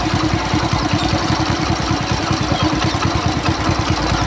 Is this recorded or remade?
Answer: recorded